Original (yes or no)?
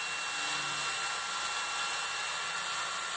yes